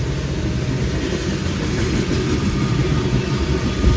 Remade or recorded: recorded